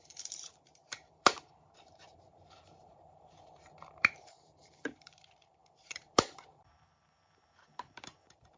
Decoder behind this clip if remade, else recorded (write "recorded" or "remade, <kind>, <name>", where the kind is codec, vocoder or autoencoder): remade, vocoder, BigVGAN v2